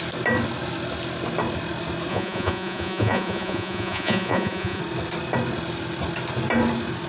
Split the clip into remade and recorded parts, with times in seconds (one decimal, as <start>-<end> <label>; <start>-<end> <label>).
0.0-2.1 recorded; 2.1-4.8 remade; 4.8-7.1 recorded